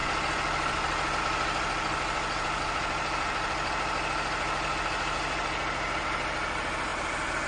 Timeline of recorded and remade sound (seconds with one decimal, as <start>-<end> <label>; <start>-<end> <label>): 0.0-7.5 recorded